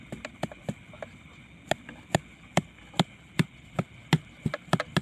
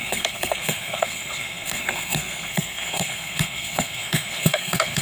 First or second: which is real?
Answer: first